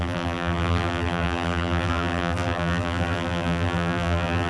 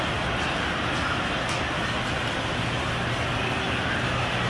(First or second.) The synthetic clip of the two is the first